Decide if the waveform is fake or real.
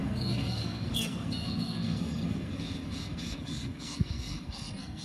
fake